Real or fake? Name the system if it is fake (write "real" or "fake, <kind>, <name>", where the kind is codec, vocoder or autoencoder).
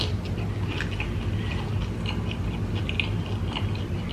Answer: real